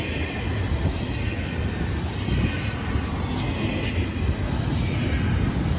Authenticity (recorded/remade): recorded